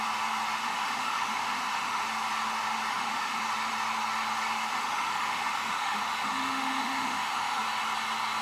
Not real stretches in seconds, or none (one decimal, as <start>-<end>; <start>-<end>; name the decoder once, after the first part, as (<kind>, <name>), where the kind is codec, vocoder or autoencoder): 0.6-2.0 (autoencoder, DAC-VAE); 2.9-3.4; 4.7-7.6